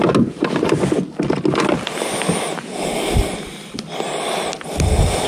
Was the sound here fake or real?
real